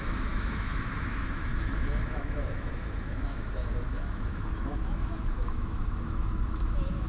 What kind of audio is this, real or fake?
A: fake